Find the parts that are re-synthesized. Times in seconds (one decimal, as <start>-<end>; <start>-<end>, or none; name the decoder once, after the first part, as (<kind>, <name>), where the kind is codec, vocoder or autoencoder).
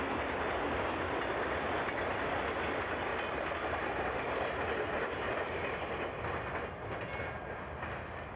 none